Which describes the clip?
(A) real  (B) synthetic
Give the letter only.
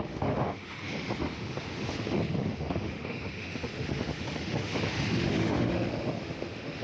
B